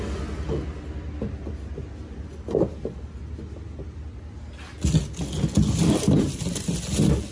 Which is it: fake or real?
real